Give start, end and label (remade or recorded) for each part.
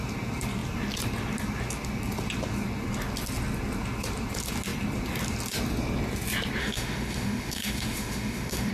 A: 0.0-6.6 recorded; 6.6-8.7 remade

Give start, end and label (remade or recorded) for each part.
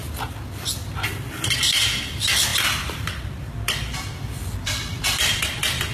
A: 0.0-1.1 recorded; 1.1-5.9 remade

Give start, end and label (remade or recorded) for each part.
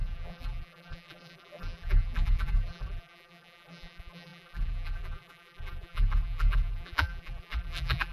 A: 0.0-8.1 remade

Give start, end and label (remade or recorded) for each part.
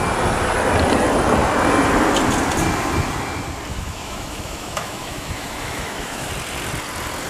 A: 0.0-3.7 recorded; 3.7-6.3 remade; 6.3-7.3 recorded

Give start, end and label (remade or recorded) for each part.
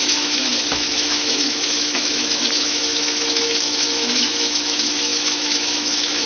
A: 0.0-6.3 remade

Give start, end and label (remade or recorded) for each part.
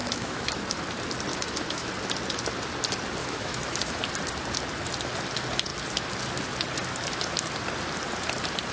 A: 0.0-0.6 remade; 0.6-1.3 recorded; 1.3-1.9 remade; 1.9-3.2 recorded; 3.2-4.0 remade; 4.0-8.7 recorded